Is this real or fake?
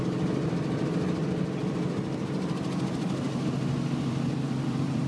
fake